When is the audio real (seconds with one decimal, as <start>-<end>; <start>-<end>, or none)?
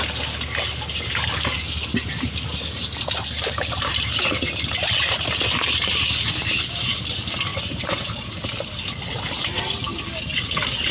0.0-10.9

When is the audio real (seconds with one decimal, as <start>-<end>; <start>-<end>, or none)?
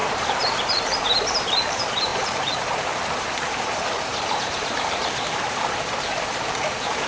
none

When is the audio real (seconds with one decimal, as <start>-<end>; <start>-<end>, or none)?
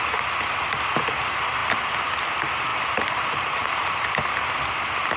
0.0-2.7; 4.1-5.2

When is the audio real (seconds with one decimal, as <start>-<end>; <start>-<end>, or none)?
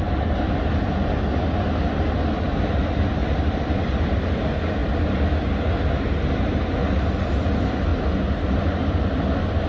0.0-3.2; 4.3-7.9; 9.2-9.7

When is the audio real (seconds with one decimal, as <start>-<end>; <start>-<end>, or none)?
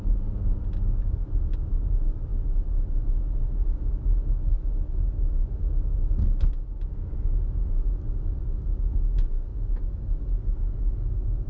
0.0-9.5; 10.1-11.5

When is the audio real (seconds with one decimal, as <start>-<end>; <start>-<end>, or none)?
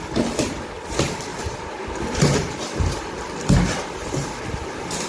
0.0-1.3; 4.4-5.1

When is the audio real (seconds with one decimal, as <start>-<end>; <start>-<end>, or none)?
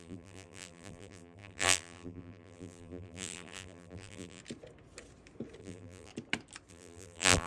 4.4-5.6; 6.1-6.7